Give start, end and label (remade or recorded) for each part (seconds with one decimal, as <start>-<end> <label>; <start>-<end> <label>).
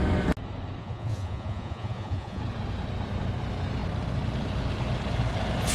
0.0-0.8 recorded; 0.8-2.4 remade; 2.4-5.7 recorded